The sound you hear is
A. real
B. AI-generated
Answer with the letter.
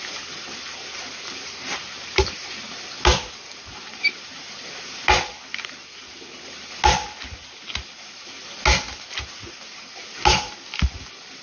A